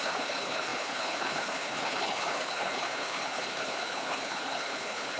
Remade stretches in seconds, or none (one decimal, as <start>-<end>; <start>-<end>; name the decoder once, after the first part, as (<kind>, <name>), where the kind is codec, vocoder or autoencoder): 0.0-5.2 (codec, HILCodec)